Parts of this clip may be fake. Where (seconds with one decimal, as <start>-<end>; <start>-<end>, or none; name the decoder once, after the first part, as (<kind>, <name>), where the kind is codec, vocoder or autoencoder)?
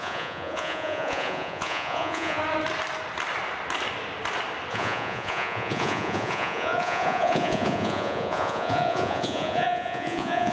0.0-2.4 (vocoder, Vocos); 4.7-10.5